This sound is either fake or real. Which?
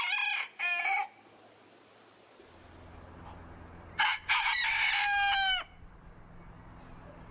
real